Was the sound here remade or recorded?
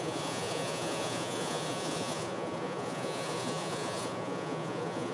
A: remade